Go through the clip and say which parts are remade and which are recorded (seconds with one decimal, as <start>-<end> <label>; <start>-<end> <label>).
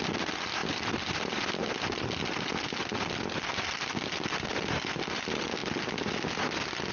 0.0-6.9 recorded